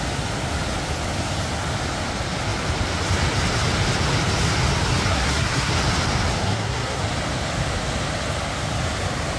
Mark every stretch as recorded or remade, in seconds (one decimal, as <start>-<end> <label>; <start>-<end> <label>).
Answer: 0.0-5.1 recorded; 5.1-5.7 remade; 5.7-6.4 recorded; 6.4-7.0 remade; 7.0-9.4 recorded